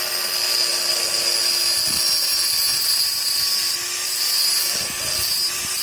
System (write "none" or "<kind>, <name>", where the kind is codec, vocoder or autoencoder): none